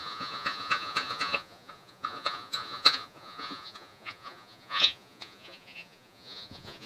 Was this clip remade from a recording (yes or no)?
yes